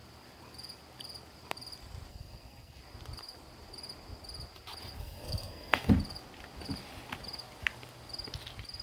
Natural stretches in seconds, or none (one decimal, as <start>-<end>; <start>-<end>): 0.0-2.1; 2.8-5.0; 5.9-8.8